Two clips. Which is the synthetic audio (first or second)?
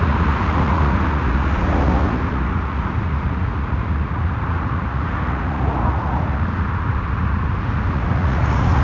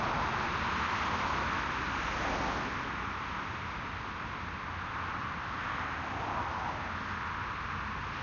first